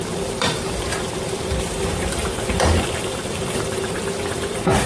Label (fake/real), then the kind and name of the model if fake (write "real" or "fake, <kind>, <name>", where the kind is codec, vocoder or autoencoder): fake, vocoder, BigVGAN v2